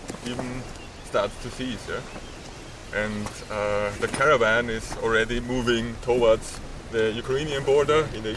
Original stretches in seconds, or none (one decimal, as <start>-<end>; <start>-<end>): 0.0-8.4